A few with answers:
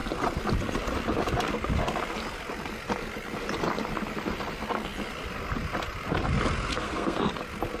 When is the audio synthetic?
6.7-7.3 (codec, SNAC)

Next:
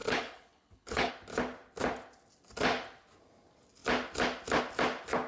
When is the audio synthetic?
0.0-1.1 (codec, HILCodec)

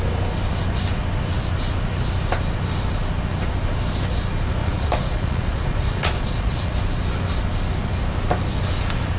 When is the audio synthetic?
4.6-6.7 (vocoder, Vocos)

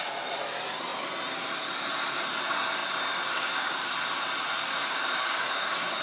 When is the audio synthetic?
2.8-3.9 (codec, DAC); 4.8-6.0

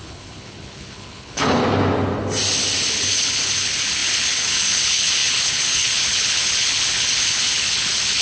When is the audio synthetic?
0.0-1.6 (codec, HILCodec); 2.9-8.2

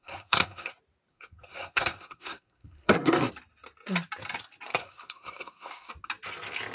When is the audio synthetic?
0.0-0.7 (codec, SNAC); 1.1-3.3; 4.8-5.9

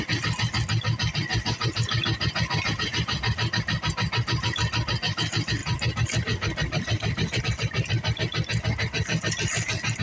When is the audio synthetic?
none

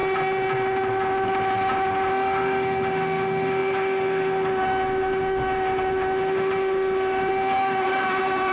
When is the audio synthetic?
2.1-8.5 (autoencoder, DAC-VAE)